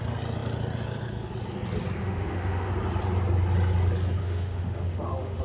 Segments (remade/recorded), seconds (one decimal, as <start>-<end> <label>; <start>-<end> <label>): 0.0-2.0 recorded; 2.0-2.7 remade; 2.7-4.2 recorded; 4.2-5.4 remade